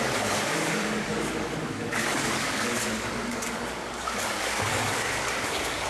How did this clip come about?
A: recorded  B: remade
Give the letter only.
B